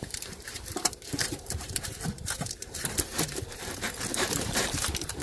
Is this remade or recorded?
remade